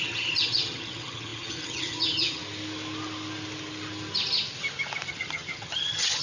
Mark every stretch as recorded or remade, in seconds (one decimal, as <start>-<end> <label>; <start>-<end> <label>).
0.0-2.4 remade; 2.4-5.1 recorded; 5.1-6.2 remade